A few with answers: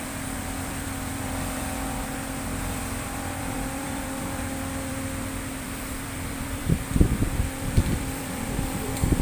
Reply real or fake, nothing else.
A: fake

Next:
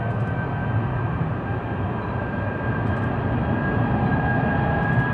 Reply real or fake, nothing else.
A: real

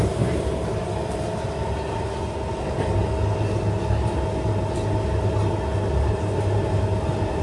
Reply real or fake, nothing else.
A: real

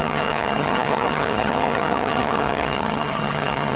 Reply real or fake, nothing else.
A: fake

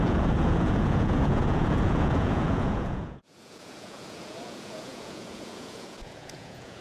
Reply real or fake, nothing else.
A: fake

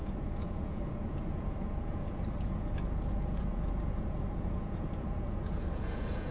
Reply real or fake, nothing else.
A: fake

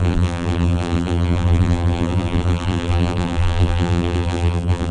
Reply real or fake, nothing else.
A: fake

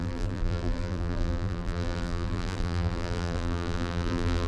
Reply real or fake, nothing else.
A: fake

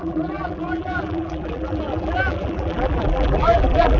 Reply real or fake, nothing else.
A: fake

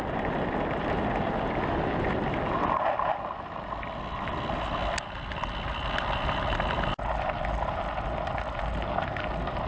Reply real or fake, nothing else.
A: real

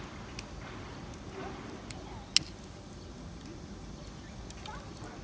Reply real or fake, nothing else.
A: real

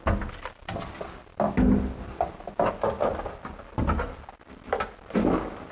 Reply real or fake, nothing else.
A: real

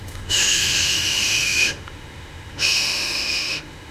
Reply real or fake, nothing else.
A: fake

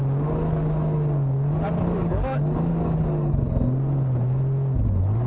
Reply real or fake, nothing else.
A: real